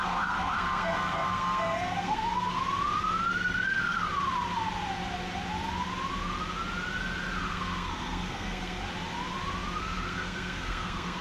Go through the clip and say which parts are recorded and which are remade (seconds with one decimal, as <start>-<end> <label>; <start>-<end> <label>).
0.0-2.6 remade; 2.6-3.3 recorded; 3.3-4.1 remade; 4.1-7.4 recorded; 7.4-8.8 remade; 8.8-9.8 recorded; 9.8-11.2 remade

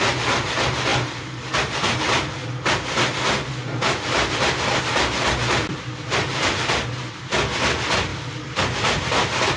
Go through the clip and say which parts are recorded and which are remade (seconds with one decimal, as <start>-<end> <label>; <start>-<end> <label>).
0.0-0.9 recorded; 0.9-2.0 remade; 2.0-5.6 recorded; 5.6-6.5 remade; 6.5-8.1 recorded; 8.1-8.6 remade; 8.6-9.6 recorded

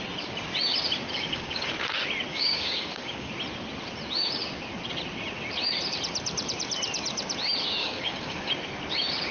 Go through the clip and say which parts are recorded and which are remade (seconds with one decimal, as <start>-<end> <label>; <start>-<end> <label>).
0.0-1.1 recorded; 1.1-1.7 remade; 1.7-2.3 recorded; 2.3-3.3 remade; 3.3-7.8 recorded; 7.8-8.5 remade; 8.5-9.3 recorded

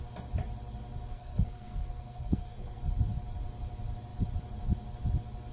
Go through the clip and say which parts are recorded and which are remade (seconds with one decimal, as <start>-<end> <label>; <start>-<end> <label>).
0.0-1.1 recorded; 1.1-2.8 remade; 2.8-5.5 recorded

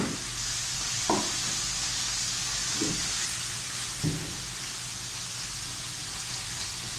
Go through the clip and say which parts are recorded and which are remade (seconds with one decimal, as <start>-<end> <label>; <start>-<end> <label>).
0.0-2.6 recorded; 2.6-4.0 remade; 4.0-7.0 recorded

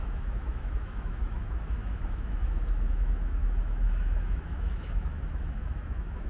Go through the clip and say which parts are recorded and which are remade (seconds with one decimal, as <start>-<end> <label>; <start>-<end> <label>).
0.0-6.3 remade